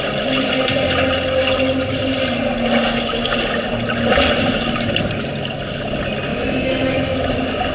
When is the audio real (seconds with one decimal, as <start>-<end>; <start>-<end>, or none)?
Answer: 0.0-6.3; 7.3-7.7